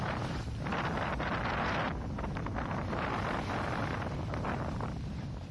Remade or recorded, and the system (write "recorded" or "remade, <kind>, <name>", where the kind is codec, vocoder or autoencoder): remade, vocoder, BigVGAN v2